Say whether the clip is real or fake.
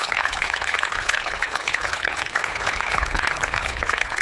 fake